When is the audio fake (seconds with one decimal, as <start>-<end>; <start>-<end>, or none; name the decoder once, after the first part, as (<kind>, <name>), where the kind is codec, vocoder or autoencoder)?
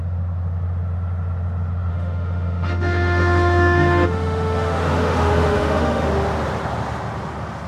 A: 1.9-6.1 (autoencoder, DAC-VAE)